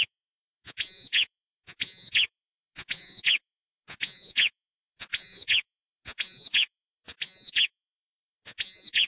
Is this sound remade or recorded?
remade